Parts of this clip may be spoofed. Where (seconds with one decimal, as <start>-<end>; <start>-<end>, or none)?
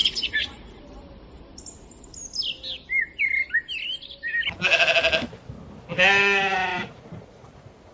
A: 0.0-0.8; 6.7-7.9